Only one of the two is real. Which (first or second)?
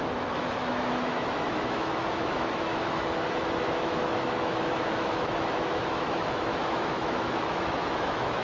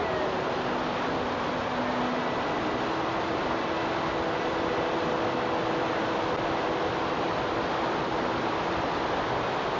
second